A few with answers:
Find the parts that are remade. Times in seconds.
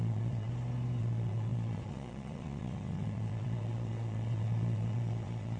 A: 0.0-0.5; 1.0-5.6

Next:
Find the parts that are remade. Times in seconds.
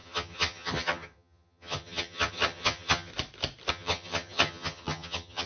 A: 0.0-3.1; 3.7-5.5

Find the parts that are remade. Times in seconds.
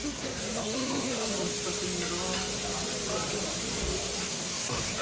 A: 0.0-1.3; 4.3-5.0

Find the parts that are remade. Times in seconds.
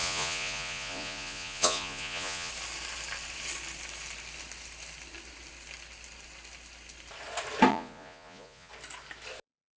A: 0.0-2.5; 7.7-8.7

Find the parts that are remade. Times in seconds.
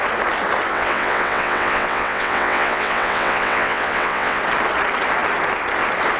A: 0.7-4.4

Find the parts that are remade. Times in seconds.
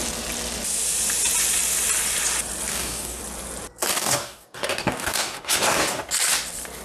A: 2.7-3.2; 3.9-6.0